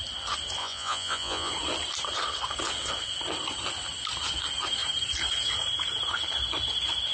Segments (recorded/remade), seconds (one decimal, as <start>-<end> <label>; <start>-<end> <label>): 0.0-0.6 recorded; 0.6-1.5 remade; 1.5-7.1 recorded

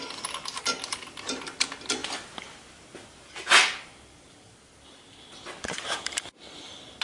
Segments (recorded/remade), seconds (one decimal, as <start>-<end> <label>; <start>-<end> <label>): 0.0-7.0 recorded

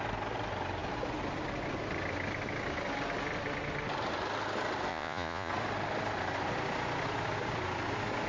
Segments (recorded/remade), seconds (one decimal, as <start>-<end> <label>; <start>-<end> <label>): 0.0-4.9 recorded; 4.9-5.5 remade; 5.5-8.3 recorded

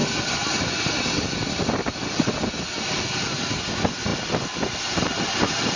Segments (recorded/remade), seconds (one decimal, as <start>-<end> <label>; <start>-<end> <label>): 0.0-5.8 recorded

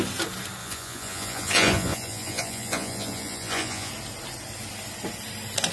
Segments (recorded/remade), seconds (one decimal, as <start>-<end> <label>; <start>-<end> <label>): 0.0-0.6 recorded; 0.6-3.9 remade; 3.9-5.7 recorded

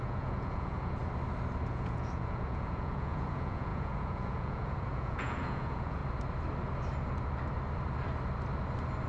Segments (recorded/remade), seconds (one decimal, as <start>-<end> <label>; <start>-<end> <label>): 0.0-1.0 remade; 1.0-1.7 recorded; 1.7-6.0 remade; 6.0-9.1 recorded